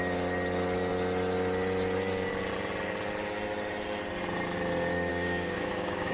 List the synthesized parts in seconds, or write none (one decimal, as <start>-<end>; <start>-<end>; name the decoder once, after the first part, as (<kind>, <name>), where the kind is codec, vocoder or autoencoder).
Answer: 5.1-6.1 (codec, DAC)